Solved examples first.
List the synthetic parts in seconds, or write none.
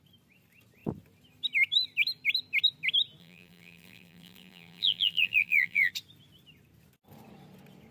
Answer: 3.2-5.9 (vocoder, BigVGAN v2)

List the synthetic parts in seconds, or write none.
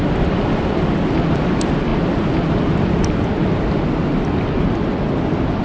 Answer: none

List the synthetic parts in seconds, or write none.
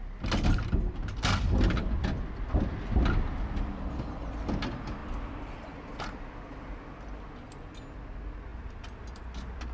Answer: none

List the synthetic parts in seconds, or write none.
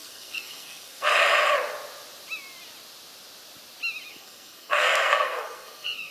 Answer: 0.0-1.1 (codec, SNAC); 4.1-6.1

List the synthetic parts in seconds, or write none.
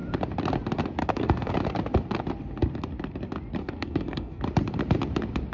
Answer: 1.0-1.5 (codec, SNAC); 3.6-4.4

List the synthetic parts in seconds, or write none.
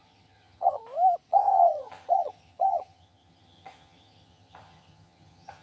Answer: 0.0-0.8 (vocoder, HiFi-GAN); 1.3-5.6